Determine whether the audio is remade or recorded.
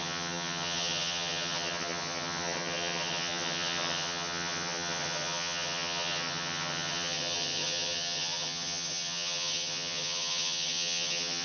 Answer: remade